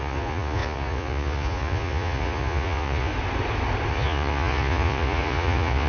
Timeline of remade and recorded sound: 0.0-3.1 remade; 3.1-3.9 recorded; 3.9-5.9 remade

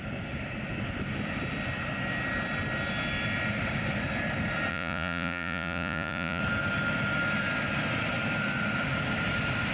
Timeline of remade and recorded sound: 0.0-4.7 recorded; 4.7-6.4 remade; 6.4-9.7 recorded